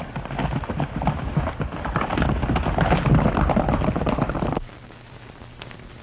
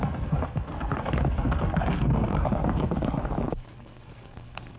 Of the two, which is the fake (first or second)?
second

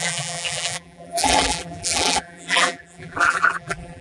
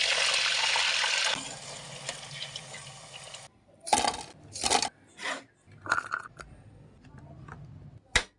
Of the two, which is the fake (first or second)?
first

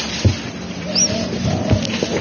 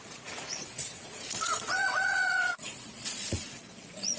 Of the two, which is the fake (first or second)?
second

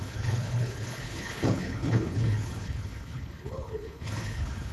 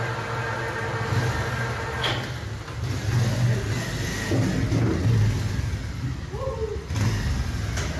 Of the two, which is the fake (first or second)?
first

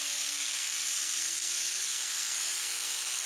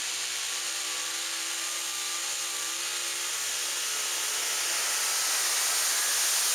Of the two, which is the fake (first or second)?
first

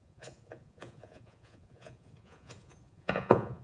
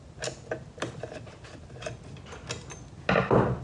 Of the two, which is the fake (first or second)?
first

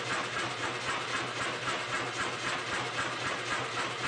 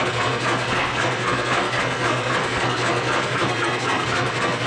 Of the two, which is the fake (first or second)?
second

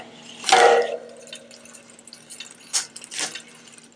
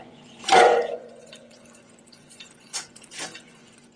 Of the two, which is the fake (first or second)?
second